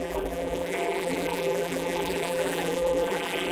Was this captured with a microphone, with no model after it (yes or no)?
no